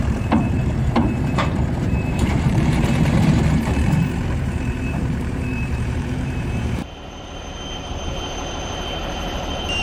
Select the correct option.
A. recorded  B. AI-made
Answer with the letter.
B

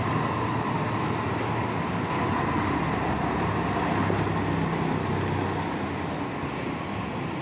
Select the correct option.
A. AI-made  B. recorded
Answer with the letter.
B